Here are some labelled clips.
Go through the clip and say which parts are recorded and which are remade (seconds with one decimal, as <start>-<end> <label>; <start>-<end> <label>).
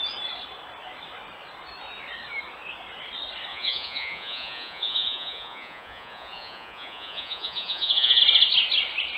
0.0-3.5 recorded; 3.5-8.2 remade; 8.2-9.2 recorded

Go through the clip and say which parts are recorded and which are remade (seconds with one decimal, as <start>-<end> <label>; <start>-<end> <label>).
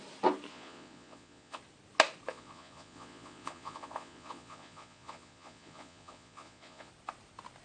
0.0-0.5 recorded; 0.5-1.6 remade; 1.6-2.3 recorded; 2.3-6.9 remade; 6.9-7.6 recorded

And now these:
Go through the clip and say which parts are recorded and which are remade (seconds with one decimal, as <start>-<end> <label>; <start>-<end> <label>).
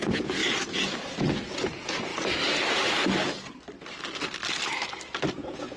0.0-0.4 remade; 0.4-1.2 recorded; 1.2-2.1 remade; 2.1-5.3 recorded; 5.3-5.8 remade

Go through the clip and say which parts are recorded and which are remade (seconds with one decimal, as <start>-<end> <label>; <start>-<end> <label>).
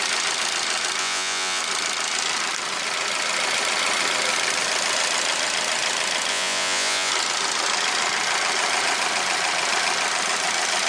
0.0-1.0 recorded; 1.0-1.6 remade; 1.6-6.3 recorded; 6.3-7.1 remade; 7.1-10.9 recorded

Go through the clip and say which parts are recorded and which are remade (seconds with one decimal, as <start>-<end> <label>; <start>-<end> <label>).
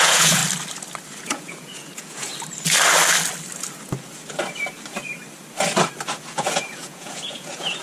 0.0-0.4 remade; 0.4-1.2 recorded; 1.2-2.3 remade; 2.3-6.2 recorded; 6.2-7.8 remade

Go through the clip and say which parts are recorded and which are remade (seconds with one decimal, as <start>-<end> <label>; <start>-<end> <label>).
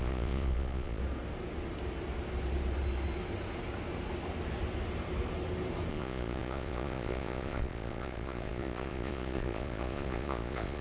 0.0-1.0 remade; 1.0-5.9 recorded; 5.9-10.8 remade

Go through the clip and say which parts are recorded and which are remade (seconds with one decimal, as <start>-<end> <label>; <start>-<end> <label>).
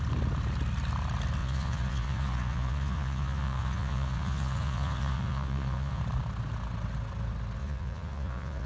0.0-1.4 recorded; 1.4-6.0 remade; 6.0-7.6 recorded; 7.6-8.7 remade